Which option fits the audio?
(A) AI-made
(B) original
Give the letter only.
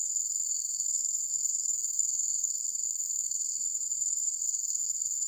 A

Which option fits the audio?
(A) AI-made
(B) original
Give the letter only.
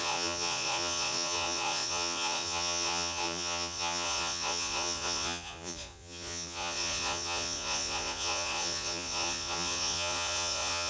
A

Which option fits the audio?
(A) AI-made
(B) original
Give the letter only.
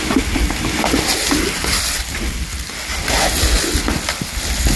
B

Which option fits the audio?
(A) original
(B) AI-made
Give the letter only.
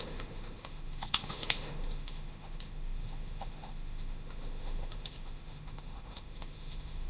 B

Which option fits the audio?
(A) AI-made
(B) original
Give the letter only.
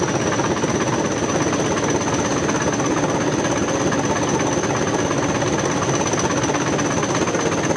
B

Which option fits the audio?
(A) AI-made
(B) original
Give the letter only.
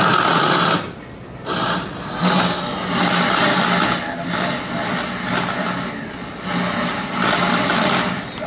B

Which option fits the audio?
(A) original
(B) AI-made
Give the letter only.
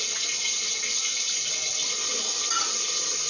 A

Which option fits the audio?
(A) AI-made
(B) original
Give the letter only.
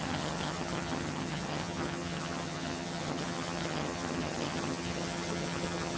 A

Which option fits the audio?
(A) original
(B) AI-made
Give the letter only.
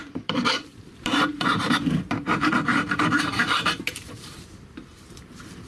B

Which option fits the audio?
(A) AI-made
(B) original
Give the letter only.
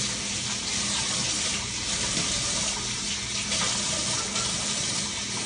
B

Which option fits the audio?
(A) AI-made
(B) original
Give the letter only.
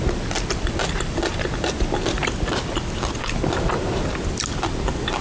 B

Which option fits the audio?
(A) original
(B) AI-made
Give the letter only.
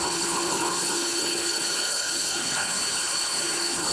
B